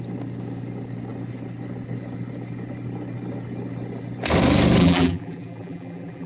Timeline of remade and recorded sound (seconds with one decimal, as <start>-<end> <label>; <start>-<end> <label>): 0.0-4.8 recorded; 4.8-6.3 remade